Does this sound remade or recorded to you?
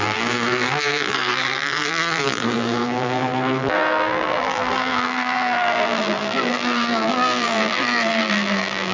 remade